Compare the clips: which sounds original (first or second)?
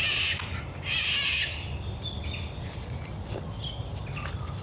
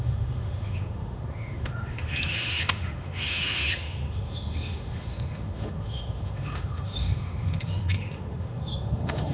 first